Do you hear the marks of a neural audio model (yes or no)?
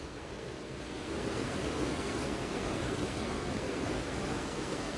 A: yes